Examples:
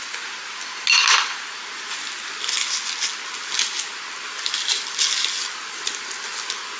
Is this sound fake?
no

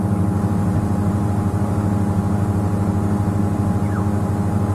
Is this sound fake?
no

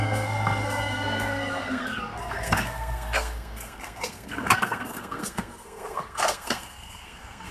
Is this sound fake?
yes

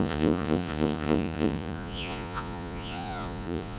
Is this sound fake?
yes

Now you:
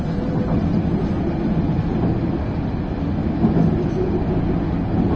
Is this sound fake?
no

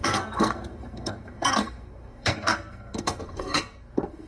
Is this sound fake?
yes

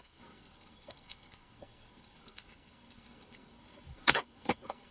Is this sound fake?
yes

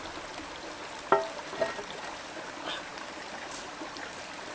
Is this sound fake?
no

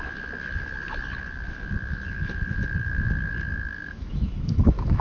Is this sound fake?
yes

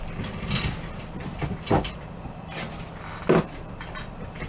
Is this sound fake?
no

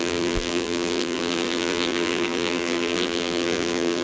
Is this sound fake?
yes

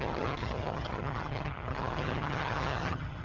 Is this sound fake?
yes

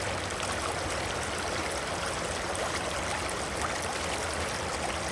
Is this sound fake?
no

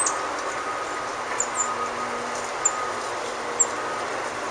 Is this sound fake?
no